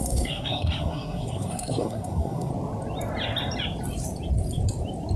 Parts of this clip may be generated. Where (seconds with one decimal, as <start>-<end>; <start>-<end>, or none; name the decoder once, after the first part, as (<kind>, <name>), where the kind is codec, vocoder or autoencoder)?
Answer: 0.0-2.5 (codec, SNAC)